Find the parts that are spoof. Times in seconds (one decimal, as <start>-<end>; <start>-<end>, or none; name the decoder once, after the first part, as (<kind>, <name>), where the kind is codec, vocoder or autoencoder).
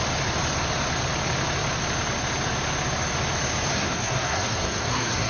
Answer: 3.7-5.3 (codec, SNAC)